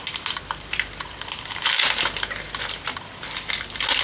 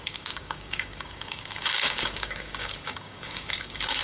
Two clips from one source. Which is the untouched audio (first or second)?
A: first